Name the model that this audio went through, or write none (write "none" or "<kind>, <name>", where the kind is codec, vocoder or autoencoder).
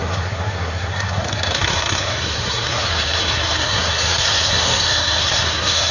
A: codec, SNAC